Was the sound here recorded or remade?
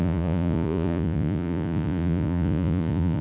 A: remade